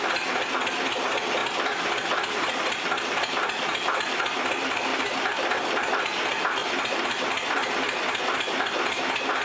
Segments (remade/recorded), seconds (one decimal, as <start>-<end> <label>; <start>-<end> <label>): 0.0-1.4 recorded; 1.4-2.5 remade; 2.5-4.9 recorded; 4.9-5.9 remade; 5.9-6.6 recorded; 6.6-9.0 remade; 9.0-9.4 recorded